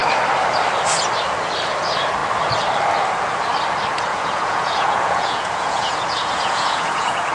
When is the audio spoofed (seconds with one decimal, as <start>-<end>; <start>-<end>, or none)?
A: 4.1-7.3